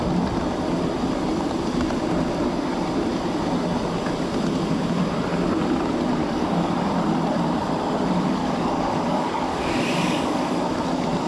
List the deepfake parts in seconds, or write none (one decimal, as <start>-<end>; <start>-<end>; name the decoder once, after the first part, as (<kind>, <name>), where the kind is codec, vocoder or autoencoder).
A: 6.2-6.7 (codec, DAC); 8.4-10.7